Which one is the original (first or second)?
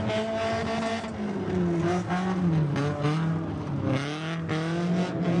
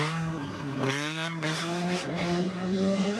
first